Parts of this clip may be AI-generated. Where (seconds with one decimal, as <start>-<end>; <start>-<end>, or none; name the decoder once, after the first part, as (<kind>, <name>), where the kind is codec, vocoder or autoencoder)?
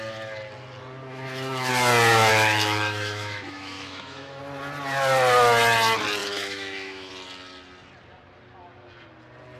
1.1-1.7 (autoencoder, DAC-VAE); 2.3-4.4; 6.2-7.1